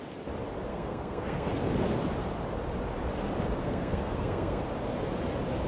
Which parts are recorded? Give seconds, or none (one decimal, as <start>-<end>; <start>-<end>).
0.0-0.7; 1.5-3.6; 4.6-5.7